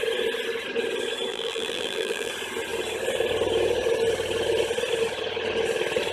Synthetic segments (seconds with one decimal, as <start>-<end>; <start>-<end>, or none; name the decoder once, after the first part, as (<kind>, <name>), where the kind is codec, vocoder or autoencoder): 1.3-2.3 (vocoder, BigVGAN v2)